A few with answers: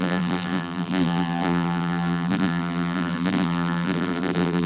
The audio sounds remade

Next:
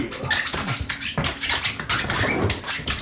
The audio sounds recorded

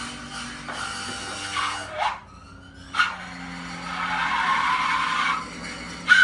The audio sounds recorded